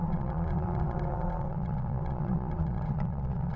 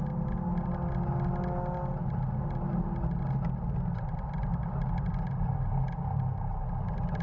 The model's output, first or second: first